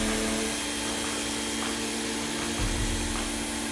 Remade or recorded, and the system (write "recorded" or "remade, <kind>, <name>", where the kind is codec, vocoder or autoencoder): recorded